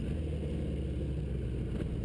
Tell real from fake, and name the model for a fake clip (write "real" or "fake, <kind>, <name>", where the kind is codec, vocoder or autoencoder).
real